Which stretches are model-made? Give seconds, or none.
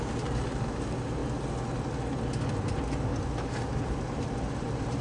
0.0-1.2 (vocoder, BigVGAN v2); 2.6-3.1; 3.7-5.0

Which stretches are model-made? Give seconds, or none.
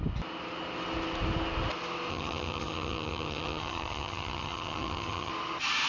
2.1-5.3 (vocoder, HiFi-GAN)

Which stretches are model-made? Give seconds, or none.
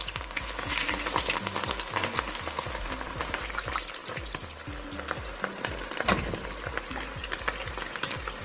none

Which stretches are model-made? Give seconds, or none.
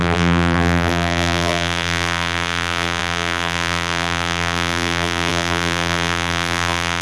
0.0-7.0 (vocoder, BigVGAN v2)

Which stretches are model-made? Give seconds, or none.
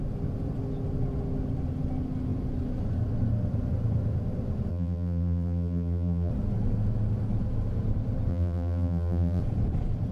4.7-6.3 (vocoder, BigVGAN v2); 8.3-9.4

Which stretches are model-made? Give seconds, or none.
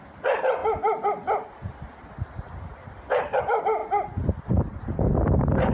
none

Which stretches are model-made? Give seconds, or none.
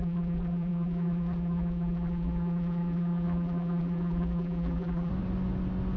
0.0-5.1 (vocoder, BigVGAN v2)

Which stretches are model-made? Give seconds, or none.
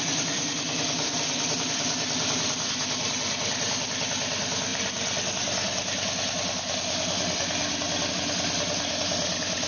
none